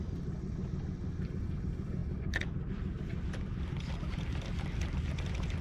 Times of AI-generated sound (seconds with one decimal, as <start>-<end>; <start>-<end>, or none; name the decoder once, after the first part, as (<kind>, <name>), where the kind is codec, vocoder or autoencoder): none